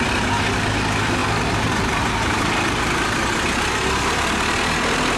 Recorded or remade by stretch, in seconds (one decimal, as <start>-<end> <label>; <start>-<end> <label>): 0.0-5.2 recorded